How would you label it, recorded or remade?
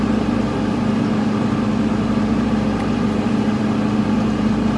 recorded